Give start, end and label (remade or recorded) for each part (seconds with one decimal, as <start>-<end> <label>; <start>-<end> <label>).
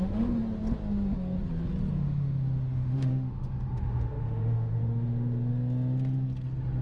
0.0-1.9 recorded; 1.9-5.5 remade; 5.5-6.8 recorded